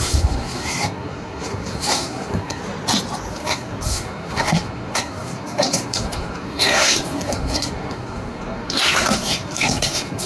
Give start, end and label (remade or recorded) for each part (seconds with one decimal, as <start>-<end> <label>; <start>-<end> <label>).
0.0-2.6 remade; 2.6-3.3 recorded; 3.3-10.3 remade